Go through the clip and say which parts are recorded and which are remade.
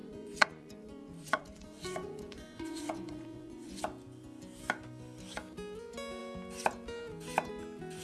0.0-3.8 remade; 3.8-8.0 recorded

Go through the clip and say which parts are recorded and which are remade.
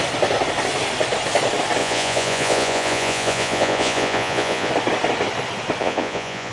0.0-1.8 recorded; 1.8-4.7 remade; 4.7-5.8 recorded; 5.8-6.5 remade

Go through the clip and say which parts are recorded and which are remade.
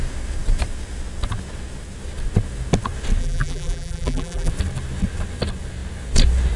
0.0-3.2 recorded; 3.2-4.5 remade; 4.5-6.6 recorded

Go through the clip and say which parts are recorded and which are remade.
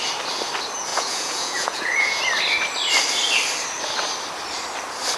0.0-0.9 recorded; 0.9-2.2 remade; 2.2-5.2 recorded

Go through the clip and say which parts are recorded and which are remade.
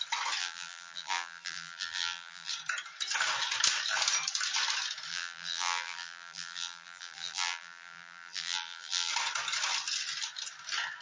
0.0-0.4 recorded; 0.4-2.5 remade; 2.5-5.1 recorded; 5.1-9.1 remade; 9.1-11.0 recorded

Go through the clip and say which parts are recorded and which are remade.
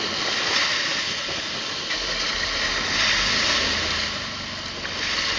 0.0-5.4 recorded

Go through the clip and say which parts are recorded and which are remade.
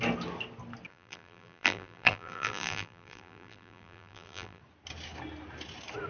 0.0-0.9 recorded; 0.9-4.6 remade; 4.6-6.1 recorded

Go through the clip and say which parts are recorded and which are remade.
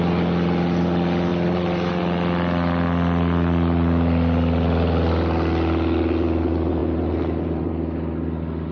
0.0-1.3 recorded; 1.3-2.0 remade; 2.0-6.8 recorded; 6.8-7.7 remade; 7.7-8.7 recorded